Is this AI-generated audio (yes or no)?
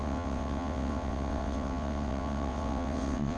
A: yes